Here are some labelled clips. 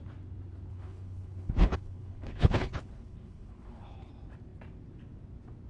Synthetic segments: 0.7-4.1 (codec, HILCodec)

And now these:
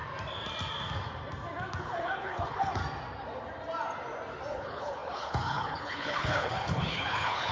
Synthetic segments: 1.8-2.8 (codec, HILCodec); 4.5-7.5

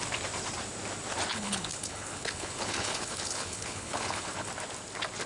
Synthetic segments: 1.3-4.5 (codec, HILCodec)

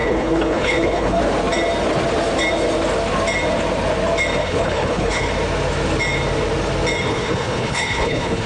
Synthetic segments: 0.0-1.2 (codec, HILCodec); 4.4-5.3; 7.1-8.5

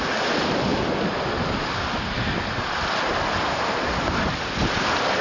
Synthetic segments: none

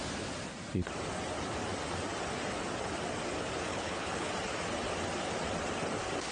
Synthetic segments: 3.7-4.3 (codec, HILCodec)